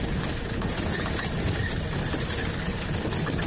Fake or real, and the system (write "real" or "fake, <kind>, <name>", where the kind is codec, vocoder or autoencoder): real